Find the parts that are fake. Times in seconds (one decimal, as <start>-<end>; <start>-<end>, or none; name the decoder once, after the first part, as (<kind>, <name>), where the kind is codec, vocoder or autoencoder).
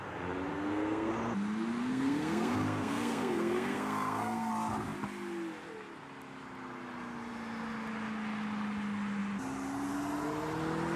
0.5-1.1 (codec, SNAC); 1.8-4.5